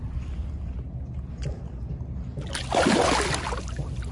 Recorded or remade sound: recorded